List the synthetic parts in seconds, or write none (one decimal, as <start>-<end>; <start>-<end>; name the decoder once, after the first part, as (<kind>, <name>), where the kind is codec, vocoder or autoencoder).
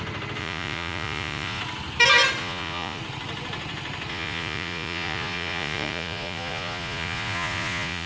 0.4-1.6 (vocoder, Vocos); 2.4-3.0; 4.1-8.1